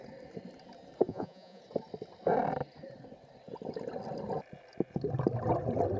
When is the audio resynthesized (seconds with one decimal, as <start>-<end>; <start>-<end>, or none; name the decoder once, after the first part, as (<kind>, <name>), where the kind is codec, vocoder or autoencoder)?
1.1-1.6 (vocoder, Vocos)